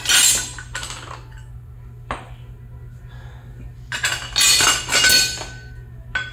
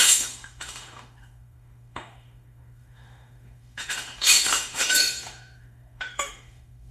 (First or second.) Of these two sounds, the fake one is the second